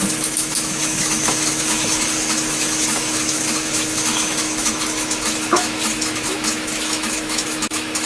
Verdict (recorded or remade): remade